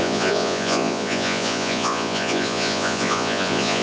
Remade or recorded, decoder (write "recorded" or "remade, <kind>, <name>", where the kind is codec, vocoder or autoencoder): remade, vocoder, Vocos